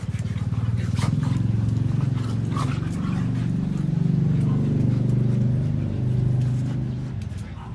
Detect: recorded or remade recorded